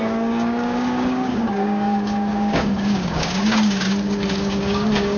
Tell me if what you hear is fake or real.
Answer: fake